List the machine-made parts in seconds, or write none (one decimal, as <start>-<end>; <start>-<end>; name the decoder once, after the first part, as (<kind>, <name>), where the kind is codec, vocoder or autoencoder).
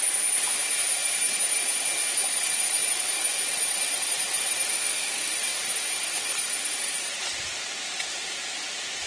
4.7-5.4 (autoencoder, DAC-VAE)